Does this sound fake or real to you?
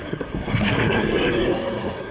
fake